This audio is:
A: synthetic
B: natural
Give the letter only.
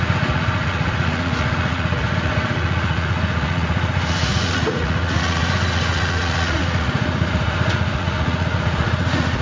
A